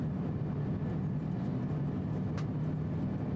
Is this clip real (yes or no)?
yes